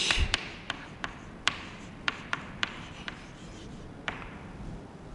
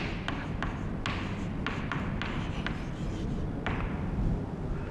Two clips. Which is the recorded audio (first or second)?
second